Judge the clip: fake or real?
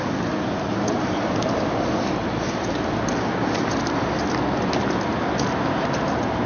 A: real